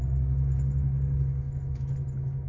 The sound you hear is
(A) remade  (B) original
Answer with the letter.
B